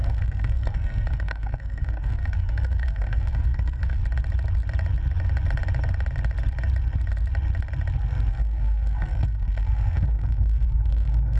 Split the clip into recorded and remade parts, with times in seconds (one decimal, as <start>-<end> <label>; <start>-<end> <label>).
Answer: 0.0-4.0 remade; 4.0-8.3 recorded; 8.3-11.4 remade